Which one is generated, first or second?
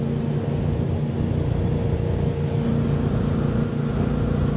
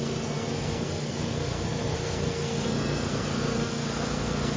second